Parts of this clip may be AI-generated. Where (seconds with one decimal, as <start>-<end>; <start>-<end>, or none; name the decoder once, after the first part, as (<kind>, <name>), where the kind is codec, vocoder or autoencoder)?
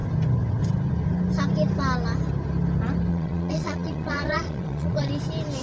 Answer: 3.1-5.1 (vocoder, Vocos)